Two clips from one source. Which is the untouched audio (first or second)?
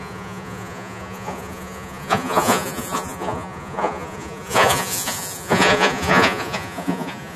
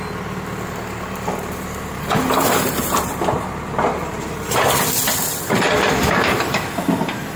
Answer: second